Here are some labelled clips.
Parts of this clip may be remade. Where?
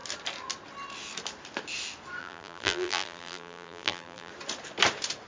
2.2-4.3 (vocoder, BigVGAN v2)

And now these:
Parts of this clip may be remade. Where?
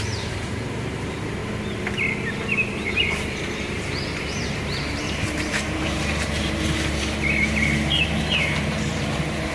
0.0-1.4 (vocoder, BigVGAN v2); 2.7-9.5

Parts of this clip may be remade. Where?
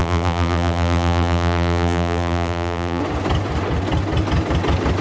0.0-3.0 (vocoder, BigVGAN v2)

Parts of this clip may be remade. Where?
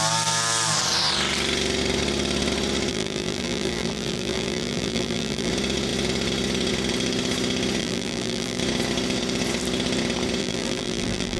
2.9-5.5 (vocoder, BigVGAN v2); 7.8-8.6; 10.4-11.4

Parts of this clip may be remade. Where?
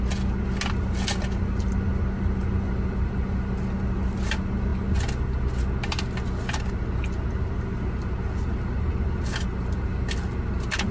none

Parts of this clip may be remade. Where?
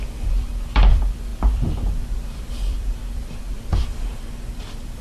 0.0-5.0 (vocoder, BigVGAN v2)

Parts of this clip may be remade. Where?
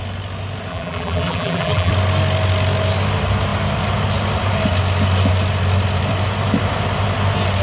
0.7-1.9 (vocoder, BigVGAN v2)